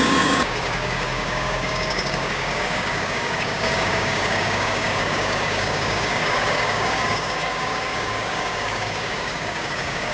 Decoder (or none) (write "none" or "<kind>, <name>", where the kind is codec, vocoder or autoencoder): codec, DAC